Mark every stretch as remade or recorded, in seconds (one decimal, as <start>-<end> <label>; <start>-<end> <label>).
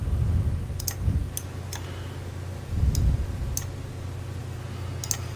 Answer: 0.0-5.4 recorded